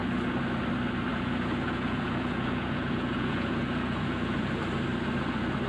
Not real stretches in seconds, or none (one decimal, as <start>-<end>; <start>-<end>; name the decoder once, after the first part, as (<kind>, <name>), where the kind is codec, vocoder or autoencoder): 1.1-4.5 (vocoder, Vocos)